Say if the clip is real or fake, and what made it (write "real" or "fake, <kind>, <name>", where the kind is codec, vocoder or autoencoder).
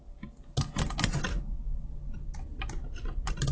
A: real